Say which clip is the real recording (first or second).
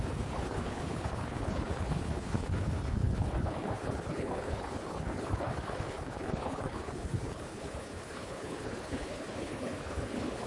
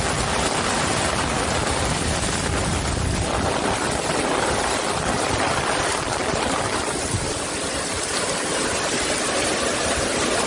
second